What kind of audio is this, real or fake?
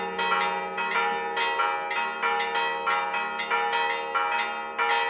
real